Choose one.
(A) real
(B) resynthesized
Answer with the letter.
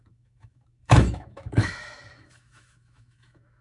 B